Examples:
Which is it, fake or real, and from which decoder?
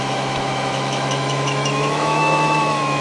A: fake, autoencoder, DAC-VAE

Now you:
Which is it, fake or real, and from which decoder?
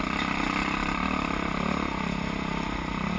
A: real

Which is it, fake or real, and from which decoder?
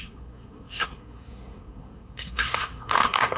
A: fake, codec, SNAC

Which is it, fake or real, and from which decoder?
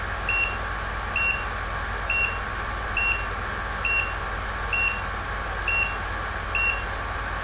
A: real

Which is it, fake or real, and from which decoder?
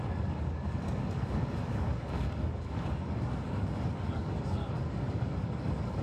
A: fake, codec, DAC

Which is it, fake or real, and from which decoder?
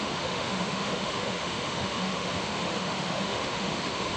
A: fake, autoencoder, DAC-VAE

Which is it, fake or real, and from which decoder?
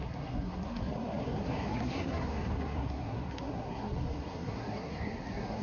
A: fake, codec, SNAC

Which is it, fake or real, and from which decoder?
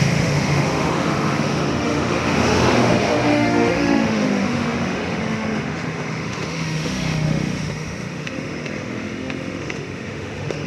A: fake, autoencoder, DAC-VAE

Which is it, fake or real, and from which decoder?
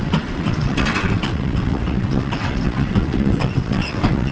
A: fake, vocoder, WaveNeXt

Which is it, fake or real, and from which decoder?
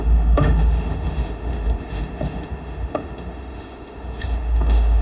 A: fake, autoencoder, DAC-VAE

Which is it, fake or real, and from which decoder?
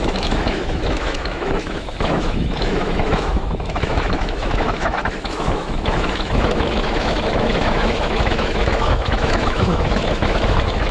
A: fake, autoencoder, DAC-VAE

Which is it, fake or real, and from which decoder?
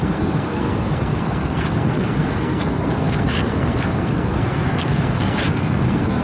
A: fake, codec, SNAC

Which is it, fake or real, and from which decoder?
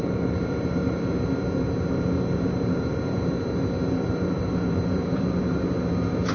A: fake, vocoder, BigVGAN v2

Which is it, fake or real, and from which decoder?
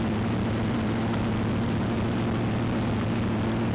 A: real